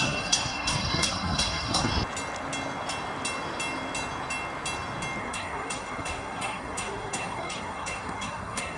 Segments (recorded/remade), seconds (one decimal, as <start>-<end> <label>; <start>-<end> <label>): 0.0-1.9 remade; 1.9-5.2 recorded; 5.2-8.8 remade